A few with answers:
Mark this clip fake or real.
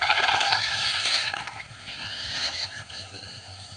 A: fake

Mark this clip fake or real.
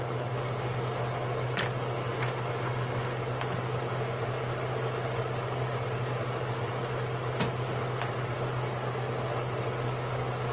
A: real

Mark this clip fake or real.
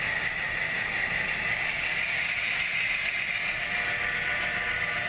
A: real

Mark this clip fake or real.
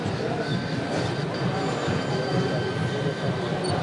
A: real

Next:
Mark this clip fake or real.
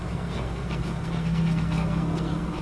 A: fake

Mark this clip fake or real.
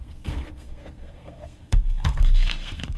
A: fake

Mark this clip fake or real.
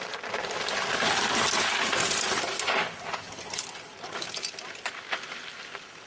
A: real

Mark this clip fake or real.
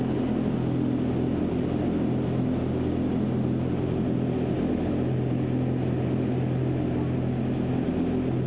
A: real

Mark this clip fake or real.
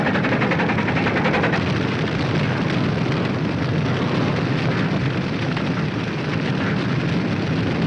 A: real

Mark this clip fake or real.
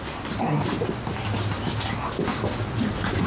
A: real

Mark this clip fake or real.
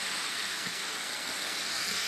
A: fake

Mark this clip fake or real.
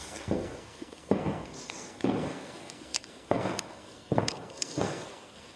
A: fake